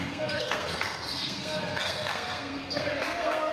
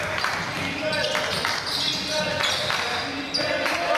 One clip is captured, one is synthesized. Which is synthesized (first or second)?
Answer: first